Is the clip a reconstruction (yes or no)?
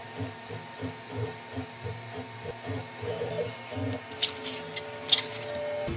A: no